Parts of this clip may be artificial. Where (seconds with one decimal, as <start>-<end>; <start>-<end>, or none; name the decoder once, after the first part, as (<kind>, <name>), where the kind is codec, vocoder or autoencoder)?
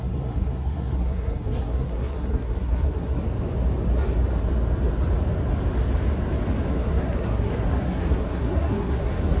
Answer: 0.0-3.2 (codec, SNAC); 6.7-9.4